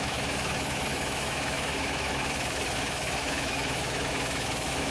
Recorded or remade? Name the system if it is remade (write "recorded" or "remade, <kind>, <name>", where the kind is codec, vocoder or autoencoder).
remade, autoencoder, DAC-VAE